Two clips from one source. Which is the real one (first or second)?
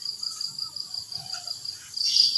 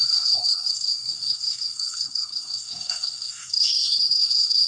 first